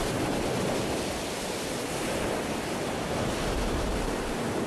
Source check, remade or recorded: recorded